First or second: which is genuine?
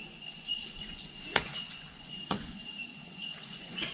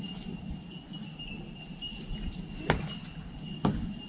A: second